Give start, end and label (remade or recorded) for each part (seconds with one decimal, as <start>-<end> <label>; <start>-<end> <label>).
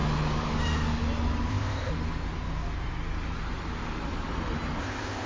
0.0-1.5 recorded; 1.5-1.9 remade; 1.9-4.8 recorded; 4.8-5.3 remade